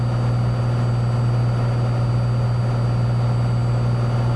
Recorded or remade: recorded